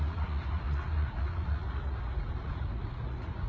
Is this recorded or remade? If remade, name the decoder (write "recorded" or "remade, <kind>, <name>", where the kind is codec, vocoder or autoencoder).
remade, vocoder, Vocos